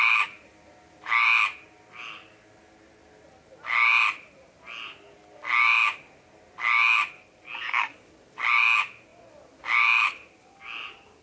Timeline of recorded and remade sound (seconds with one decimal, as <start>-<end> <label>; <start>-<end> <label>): 0.0-11.2 recorded